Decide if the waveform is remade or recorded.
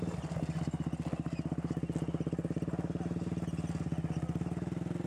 recorded